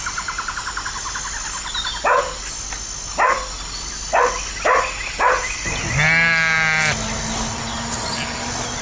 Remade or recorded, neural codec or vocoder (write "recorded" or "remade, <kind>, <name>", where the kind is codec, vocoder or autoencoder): recorded